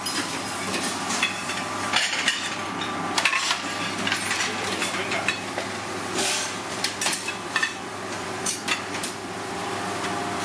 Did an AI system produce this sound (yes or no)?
yes